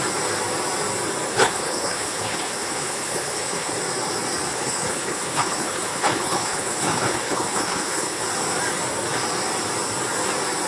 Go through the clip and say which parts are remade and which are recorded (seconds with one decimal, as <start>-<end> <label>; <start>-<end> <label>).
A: 0.0-1.3 recorded; 1.3-3.7 remade; 3.7-4.5 recorded; 4.5-8.2 remade; 8.2-10.7 recorded